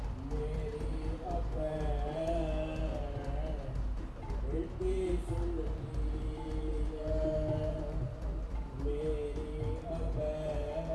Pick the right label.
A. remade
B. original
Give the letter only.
B